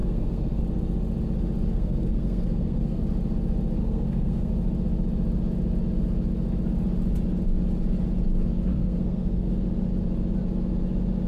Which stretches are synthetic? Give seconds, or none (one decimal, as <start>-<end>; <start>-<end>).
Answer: 0.0-0.6; 1.7-3.0; 3.8-4.5; 8.7-9.5